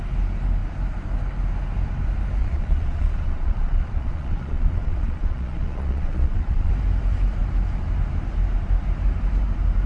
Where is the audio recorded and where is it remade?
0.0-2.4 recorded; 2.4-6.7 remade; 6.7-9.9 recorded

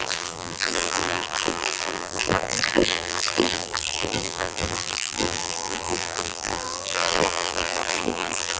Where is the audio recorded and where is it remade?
0.0-8.6 remade

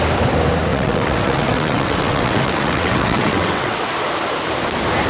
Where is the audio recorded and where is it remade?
0.0-0.7 recorded; 0.7-3.8 remade; 3.8-5.1 recorded

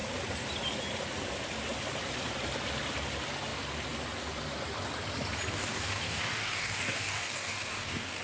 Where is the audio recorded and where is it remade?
0.0-5.5 recorded; 5.5-8.2 remade

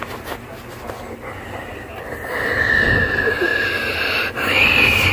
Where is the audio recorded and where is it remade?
0.0-1.7 recorded; 1.7-2.3 remade; 2.3-5.1 recorded

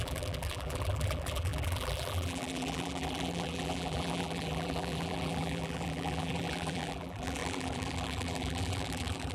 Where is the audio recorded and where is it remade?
0.0-9.3 remade

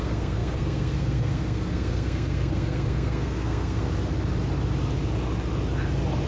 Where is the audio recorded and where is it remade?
0.0-3.9 remade; 3.9-6.3 recorded